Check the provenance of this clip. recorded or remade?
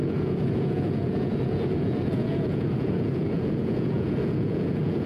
remade